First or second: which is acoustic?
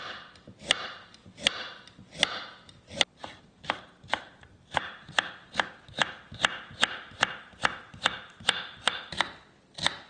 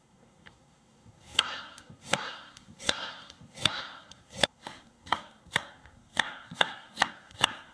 first